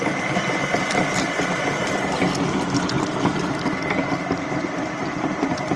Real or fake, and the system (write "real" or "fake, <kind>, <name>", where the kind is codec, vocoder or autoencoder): real